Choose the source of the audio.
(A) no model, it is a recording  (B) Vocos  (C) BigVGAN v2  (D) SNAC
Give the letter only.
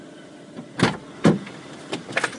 A